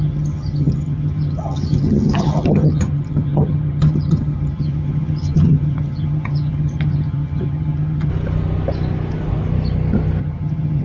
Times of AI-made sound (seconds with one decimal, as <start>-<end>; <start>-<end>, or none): 0.0-8.1; 10.2-10.8